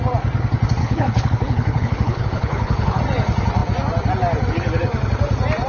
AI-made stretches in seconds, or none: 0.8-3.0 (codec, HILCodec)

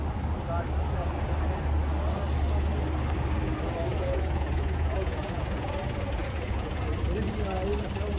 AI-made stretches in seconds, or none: 3.9-5.7 (vocoder, Vocos); 6.2-6.8

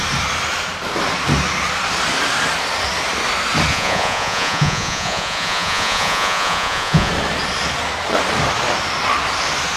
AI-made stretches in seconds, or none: 3.7-7.1 (vocoder, Vocos)

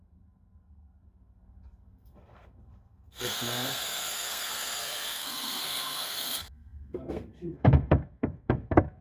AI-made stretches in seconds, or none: 0.0-9.0 (codec, SNAC)